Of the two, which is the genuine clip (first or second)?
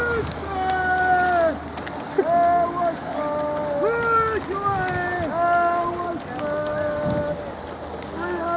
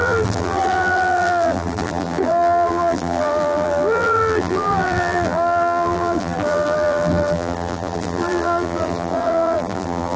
first